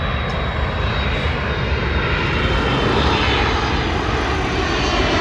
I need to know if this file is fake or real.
real